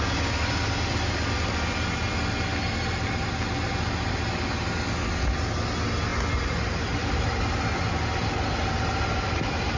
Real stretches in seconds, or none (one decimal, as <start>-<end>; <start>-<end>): 0.0-9.8